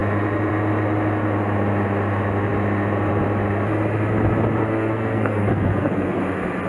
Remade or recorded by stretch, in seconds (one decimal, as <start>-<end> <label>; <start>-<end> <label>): 0.0-4.6 recorded; 4.6-6.2 remade; 6.2-6.7 recorded